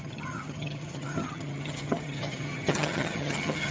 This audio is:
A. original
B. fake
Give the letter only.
B